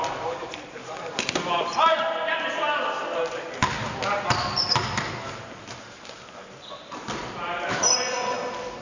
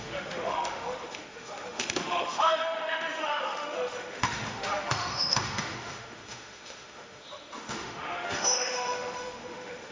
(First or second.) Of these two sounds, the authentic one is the first